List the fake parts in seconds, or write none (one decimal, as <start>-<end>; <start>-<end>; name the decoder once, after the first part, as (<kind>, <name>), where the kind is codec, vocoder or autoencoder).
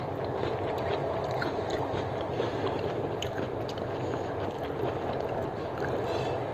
1.0-3.6 (vocoder, BigVGAN v2)